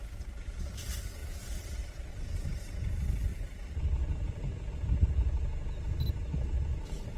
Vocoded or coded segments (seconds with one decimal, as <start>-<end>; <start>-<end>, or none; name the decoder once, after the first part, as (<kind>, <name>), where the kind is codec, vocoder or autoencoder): 3.3-4.7 (vocoder, BigVGAN v2)